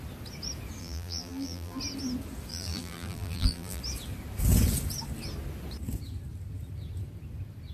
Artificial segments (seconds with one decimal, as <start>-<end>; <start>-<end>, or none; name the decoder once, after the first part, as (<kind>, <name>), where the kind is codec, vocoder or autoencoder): 0.8-1.8 (vocoder, BigVGAN v2); 2.5-3.8

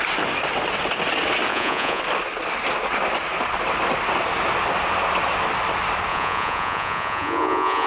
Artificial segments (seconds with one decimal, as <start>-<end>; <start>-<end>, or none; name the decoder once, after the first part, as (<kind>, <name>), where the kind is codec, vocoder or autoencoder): 1.5-2.0 (vocoder, Vocos); 6.1-7.9

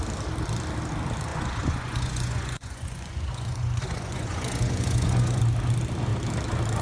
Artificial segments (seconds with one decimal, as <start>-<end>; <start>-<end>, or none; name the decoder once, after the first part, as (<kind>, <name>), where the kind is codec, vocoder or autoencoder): 1.3-5.4 (vocoder, Vocos)

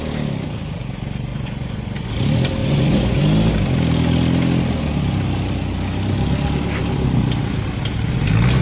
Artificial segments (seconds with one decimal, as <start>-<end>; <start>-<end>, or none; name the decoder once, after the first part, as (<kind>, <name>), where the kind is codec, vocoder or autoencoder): 1.3-2.1 (vocoder, Vocos); 2.6-3.2

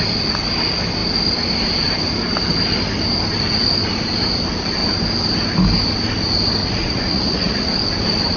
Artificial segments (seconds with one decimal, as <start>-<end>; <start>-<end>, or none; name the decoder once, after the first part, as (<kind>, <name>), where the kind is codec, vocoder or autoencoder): 6.6-7.8 (vocoder, Vocos)

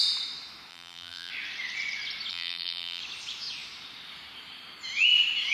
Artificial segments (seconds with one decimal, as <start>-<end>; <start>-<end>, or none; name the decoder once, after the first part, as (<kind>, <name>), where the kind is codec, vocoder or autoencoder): 0.7-1.3 (vocoder, BigVGAN v2); 2.3-3.0

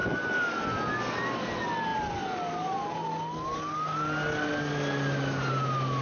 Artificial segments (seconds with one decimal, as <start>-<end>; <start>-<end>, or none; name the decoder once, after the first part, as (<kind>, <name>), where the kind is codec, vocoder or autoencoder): 0.0-0.5 (vocoder, BigVGAN v2)

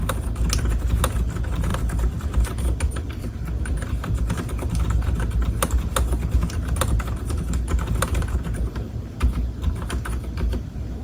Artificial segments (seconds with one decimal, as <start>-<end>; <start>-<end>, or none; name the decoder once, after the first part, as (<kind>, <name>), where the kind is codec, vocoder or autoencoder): 1.7-3.6 (vocoder, BigVGAN v2)